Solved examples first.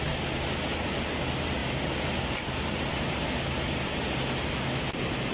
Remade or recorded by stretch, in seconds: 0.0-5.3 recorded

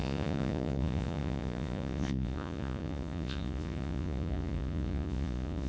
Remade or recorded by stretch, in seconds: 0.0-5.7 remade

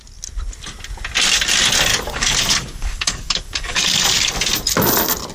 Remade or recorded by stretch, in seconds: 0.0-1.9 recorded; 1.9-4.3 remade; 4.3-5.3 recorded

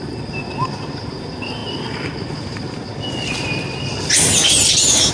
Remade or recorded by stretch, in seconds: 0.0-5.1 recorded